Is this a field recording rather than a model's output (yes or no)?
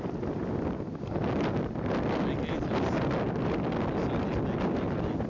yes